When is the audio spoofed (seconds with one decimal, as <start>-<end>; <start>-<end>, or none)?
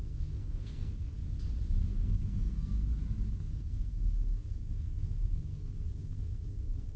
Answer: 0.0-1.2; 1.9-2.9; 3.4-7.0